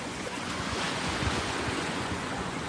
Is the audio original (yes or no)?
no